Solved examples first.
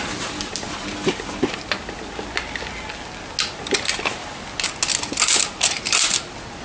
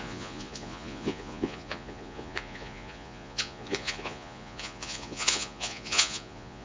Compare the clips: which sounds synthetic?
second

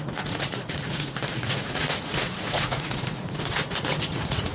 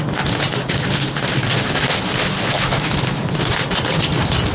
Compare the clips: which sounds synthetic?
first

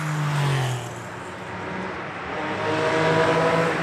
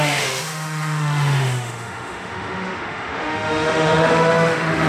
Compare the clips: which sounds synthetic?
second